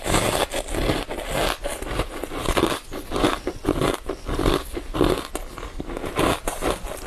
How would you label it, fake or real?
real